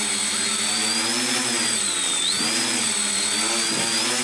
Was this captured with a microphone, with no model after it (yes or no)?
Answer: yes